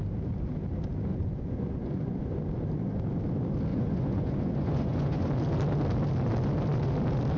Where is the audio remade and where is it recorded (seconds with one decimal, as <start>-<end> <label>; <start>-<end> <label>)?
0.0-1.1 recorded; 1.1-2.3 remade; 2.3-3.7 recorded; 3.7-5.3 remade; 5.3-7.4 recorded